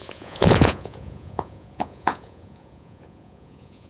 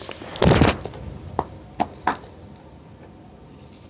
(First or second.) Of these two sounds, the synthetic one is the first